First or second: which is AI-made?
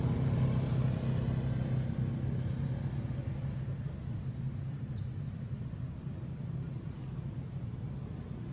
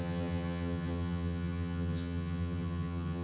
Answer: second